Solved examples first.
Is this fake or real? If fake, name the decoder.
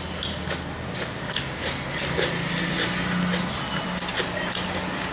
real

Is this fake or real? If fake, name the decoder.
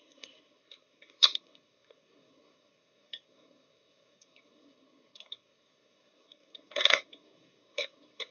fake, codec, SNAC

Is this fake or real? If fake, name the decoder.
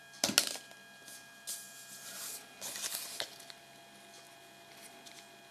real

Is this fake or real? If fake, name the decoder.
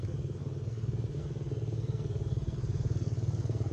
fake, codec, SNAC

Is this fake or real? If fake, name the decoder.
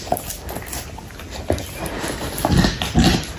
real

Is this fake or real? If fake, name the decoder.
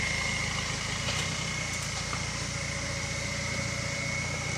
real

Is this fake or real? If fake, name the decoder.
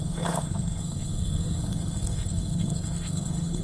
fake, codec, SNAC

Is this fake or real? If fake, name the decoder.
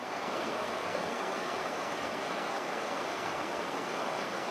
fake, codec, SNAC